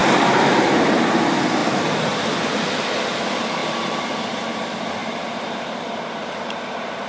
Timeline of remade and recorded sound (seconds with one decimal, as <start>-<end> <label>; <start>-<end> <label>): 0.0-1.0 remade; 1.0-5.0 recorded; 5.0-7.1 remade